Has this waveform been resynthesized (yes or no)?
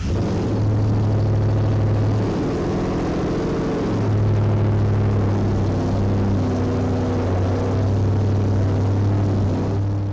no